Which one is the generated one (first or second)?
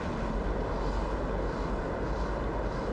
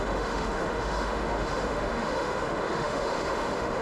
second